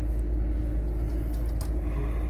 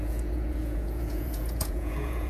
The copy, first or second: second